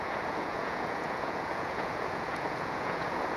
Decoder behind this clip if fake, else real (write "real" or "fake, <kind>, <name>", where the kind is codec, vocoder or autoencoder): fake, vocoder, Vocos